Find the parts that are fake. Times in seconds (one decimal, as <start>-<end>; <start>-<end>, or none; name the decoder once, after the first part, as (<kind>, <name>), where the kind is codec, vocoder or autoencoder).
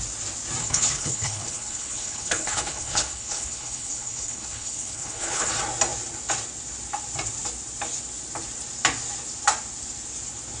0.6-5.5 (codec, HILCodec)